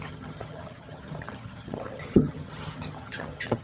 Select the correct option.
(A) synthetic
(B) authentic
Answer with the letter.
A